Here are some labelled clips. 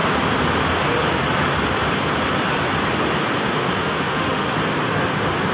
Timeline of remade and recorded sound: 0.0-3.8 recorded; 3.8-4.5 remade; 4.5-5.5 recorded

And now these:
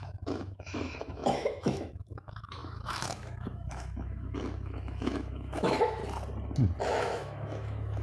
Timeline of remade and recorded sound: 0.0-6.0 remade; 6.0-6.8 recorded; 6.8-8.0 remade

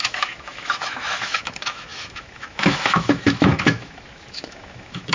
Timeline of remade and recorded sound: 0.0-5.1 remade

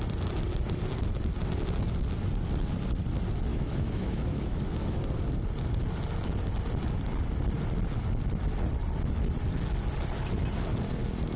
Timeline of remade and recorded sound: 0.0-3.5 recorded; 3.5-5.0 remade; 5.0-11.4 recorded